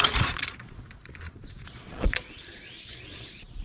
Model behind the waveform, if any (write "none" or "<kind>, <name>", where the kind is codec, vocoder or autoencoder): vocoder, Vocos